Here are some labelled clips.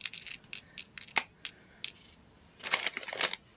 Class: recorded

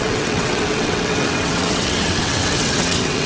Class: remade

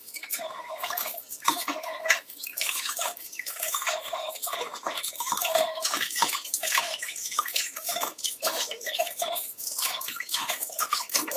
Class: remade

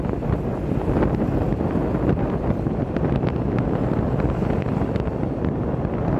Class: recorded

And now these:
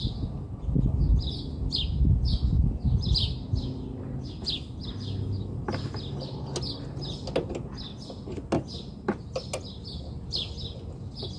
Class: recorded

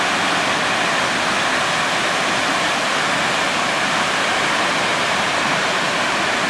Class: recorded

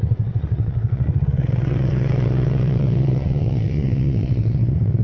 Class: remade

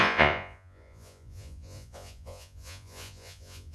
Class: remade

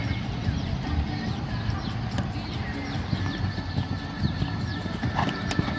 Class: recorded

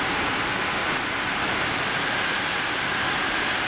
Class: recorded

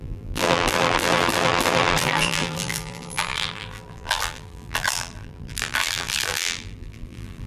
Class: remade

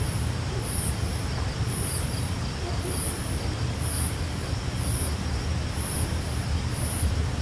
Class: recorded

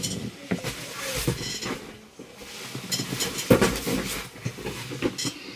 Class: recorded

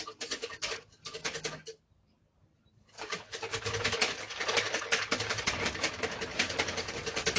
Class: recorded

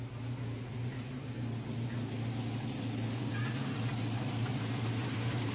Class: recorded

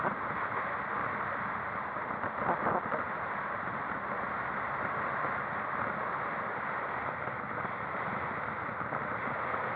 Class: recorded